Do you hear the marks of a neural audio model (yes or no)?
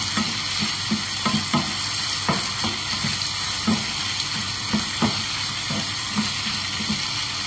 no